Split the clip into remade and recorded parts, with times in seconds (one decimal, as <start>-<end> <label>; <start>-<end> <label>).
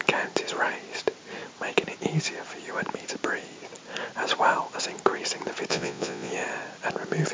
0.0-5.7 recorded; 5.7-6.3 remade; 6.3-7.3 recorded